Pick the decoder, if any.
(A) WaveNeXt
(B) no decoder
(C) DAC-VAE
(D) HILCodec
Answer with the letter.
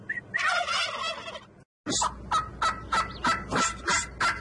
B